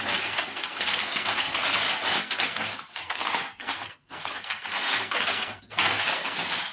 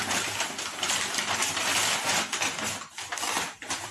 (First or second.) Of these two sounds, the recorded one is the second